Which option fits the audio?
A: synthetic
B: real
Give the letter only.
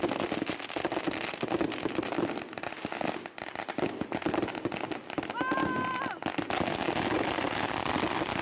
B